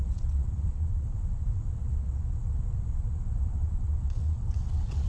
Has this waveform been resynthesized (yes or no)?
yes